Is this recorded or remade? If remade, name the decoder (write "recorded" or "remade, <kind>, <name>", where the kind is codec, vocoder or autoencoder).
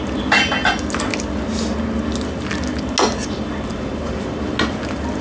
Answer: recorded